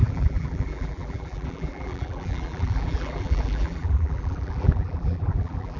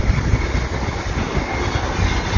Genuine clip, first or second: second